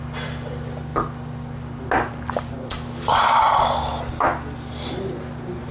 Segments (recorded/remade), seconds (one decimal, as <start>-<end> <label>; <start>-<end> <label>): 0.0-5.7 recorded